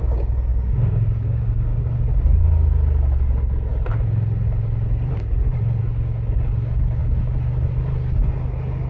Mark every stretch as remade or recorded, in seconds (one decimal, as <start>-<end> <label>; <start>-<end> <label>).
0.0-0.5 recorded; 0.5-2.1 remade; 2.1-8.9 recorded